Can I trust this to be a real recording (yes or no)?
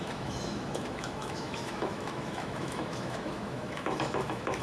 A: no